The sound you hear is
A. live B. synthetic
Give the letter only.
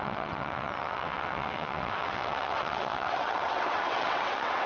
B